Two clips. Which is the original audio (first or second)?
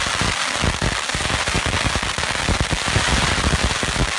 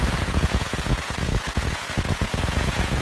first